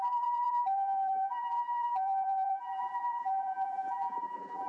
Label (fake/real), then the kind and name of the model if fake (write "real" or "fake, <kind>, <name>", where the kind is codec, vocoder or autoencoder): fake, vocoder, BigVGAN v2